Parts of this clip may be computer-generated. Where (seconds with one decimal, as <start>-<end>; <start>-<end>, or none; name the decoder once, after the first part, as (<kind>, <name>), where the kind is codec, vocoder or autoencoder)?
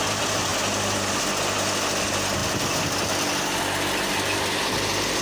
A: none